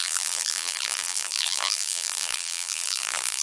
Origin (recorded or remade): remade